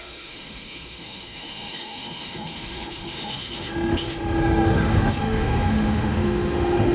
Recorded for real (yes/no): no